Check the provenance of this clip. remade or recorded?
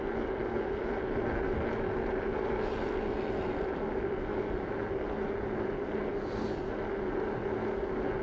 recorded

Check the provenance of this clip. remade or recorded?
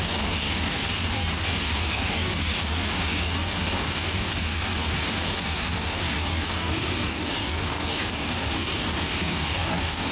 remade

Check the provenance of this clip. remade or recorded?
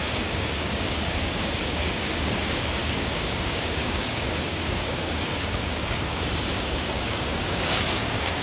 remade